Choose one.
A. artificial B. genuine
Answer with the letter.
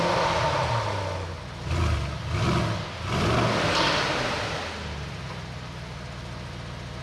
B